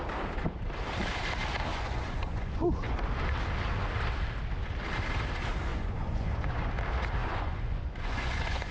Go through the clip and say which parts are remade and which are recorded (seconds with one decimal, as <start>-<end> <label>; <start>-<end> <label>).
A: 0.0-1.7 recorded; 1.7-3.0 remade; 3.0-5.7 recorded; 5.7-6.7 remade; 6.7-7.2 recorded; 7.2-8.7 remade